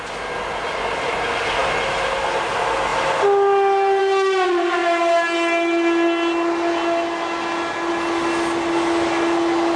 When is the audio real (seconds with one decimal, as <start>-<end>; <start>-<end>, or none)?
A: 0.0-9.8